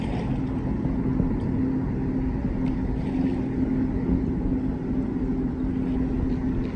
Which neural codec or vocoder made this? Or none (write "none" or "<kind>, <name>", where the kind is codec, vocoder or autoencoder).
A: none